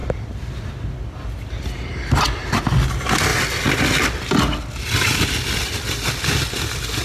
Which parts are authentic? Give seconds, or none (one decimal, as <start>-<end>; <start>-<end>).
0.0-7.0